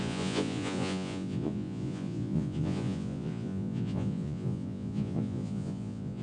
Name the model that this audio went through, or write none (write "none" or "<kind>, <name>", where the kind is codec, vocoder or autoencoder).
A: vocoder, Vocos